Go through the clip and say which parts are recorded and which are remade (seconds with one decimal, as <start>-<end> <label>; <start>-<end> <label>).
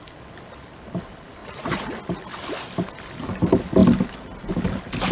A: 0.0-1.4 recorded; 1.4-2.0 remade; 2.0-5.1 recorded